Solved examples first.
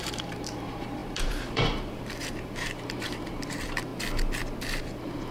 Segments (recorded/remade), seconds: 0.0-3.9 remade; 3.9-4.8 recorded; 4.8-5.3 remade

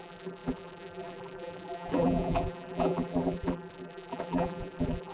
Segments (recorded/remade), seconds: 0.0-5.1 remade

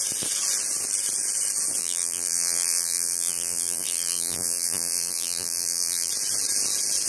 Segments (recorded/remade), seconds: 0.0-1.8 recorded; 1.8-6.1 remade; 6.1-7.1 recorded

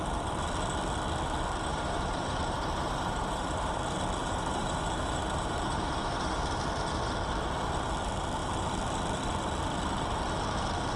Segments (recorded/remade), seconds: 0.0-1.7 recorded; 1.7-3.8 remade; 3.8-4.2 recorded; 4.2-6.4 remade; 6.4-11.0 recorded

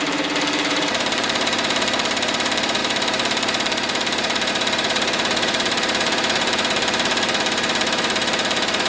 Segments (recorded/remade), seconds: 0.0-8.9 remade

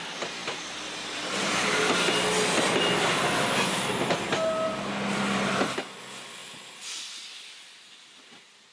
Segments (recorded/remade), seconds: 0.0-8.7 recorded